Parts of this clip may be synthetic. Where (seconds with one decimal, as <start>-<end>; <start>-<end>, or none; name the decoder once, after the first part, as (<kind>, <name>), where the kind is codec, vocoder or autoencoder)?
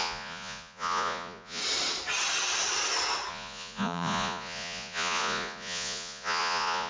0.0-1.6 (vocoder, Vocos); 3.3-6.9